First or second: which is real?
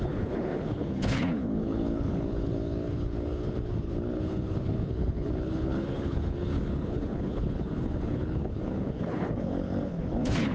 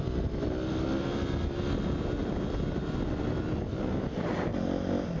second